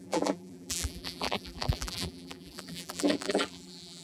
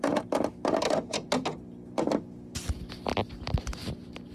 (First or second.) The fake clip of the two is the first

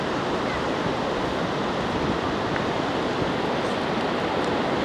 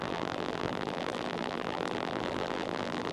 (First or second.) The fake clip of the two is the second